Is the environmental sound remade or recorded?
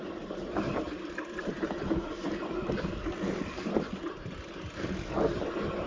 recorded